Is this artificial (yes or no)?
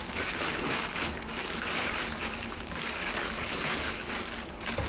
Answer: yes